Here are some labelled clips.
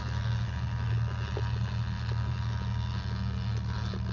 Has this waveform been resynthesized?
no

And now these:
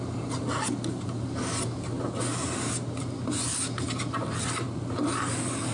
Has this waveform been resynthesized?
no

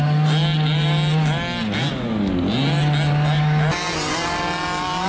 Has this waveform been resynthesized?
no